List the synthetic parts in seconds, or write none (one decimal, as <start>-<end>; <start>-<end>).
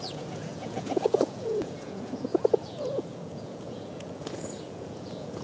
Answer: 0.0-5.4